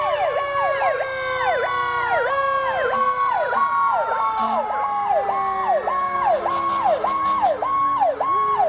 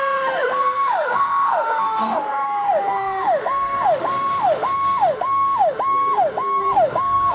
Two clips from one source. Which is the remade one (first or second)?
second